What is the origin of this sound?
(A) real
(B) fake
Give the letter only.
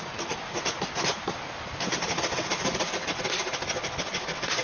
A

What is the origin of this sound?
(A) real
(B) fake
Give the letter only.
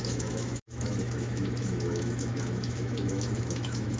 B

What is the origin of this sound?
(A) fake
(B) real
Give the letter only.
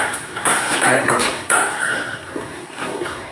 A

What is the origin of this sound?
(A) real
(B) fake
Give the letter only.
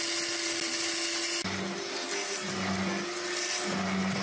A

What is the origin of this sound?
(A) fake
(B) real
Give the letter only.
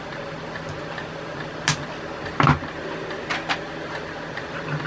B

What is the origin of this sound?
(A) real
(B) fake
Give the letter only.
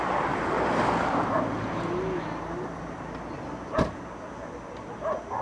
A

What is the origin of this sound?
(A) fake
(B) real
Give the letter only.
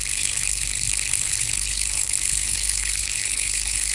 A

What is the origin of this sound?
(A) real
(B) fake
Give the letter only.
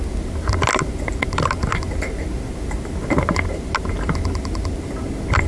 A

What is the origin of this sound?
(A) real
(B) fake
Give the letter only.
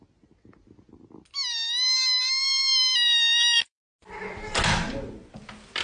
A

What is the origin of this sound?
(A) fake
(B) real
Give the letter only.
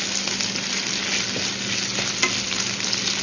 B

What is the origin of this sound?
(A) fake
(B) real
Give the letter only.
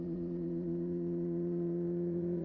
A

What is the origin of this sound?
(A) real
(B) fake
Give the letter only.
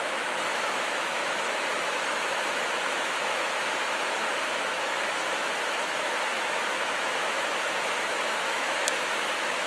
B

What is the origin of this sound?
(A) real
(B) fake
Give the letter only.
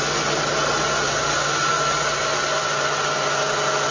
A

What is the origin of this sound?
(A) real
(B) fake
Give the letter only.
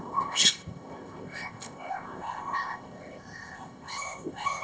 B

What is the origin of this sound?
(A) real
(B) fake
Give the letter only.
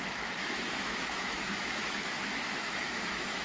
B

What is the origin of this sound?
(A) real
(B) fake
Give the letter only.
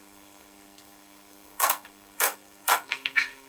B